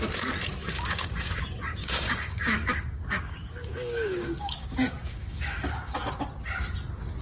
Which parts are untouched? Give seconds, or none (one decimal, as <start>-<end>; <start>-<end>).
0.0-0.6; 1.4-1.8; 6.1-7.2

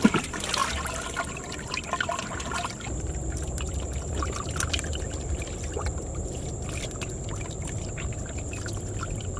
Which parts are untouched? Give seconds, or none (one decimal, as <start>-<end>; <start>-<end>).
0.0-9.4

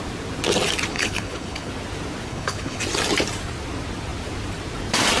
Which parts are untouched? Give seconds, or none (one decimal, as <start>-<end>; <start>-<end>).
0.0-0.9; 1.7-2.3; 2.8-5.2

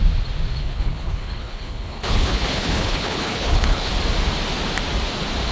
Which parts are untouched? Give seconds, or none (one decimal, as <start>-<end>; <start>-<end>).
0.0-0.6; 3.9-5.5